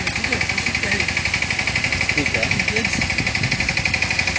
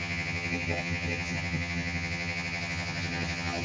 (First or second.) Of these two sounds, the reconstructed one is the second